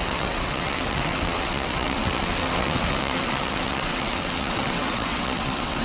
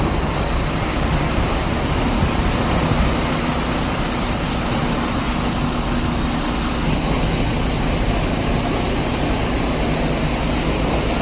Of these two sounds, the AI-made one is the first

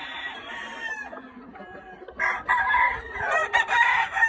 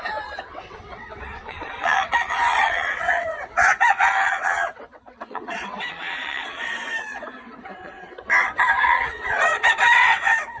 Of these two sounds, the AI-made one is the second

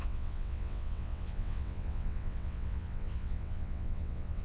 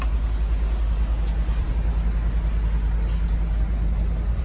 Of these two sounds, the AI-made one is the first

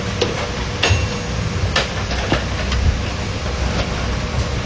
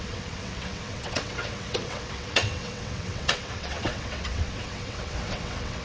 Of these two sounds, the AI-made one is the second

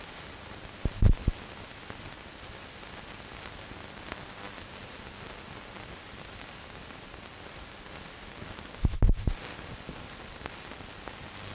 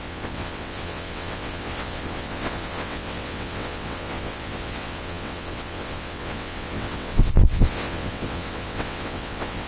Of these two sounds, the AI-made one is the second